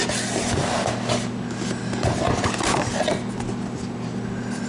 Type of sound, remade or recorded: recorded